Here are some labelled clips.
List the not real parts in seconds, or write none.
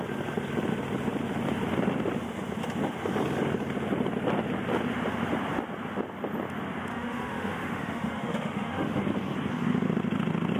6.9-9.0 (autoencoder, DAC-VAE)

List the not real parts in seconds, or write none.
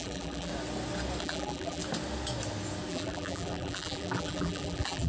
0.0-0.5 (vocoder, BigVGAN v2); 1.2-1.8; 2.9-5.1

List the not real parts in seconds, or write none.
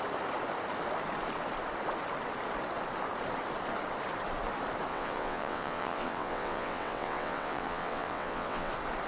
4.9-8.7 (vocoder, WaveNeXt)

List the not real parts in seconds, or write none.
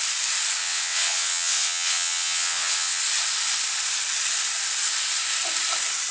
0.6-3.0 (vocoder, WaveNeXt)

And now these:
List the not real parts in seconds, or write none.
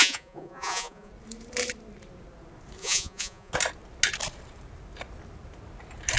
0.0-1.1 (vocoder, Vocos); 2.8-3.5